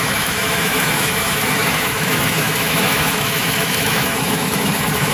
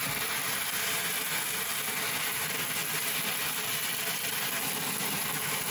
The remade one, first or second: first